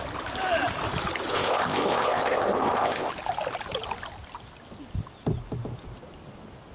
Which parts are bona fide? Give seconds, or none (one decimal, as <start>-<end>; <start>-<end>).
0.0-1.3; 3.1-6.7